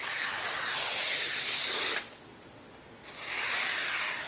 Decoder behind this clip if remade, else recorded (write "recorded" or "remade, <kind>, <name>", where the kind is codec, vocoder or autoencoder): recorded